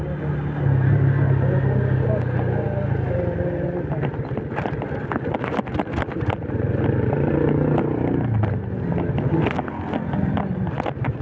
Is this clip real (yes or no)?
yes